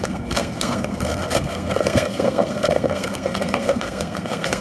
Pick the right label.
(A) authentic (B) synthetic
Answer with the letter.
B